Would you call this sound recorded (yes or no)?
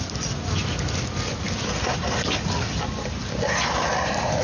yes